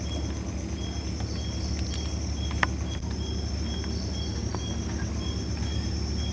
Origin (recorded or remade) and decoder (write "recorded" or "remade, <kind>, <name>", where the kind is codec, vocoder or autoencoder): recorded